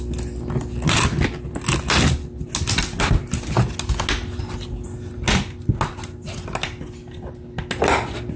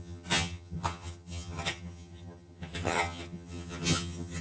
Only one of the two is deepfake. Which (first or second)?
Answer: second